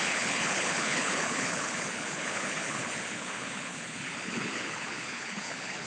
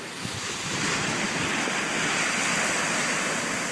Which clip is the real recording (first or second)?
second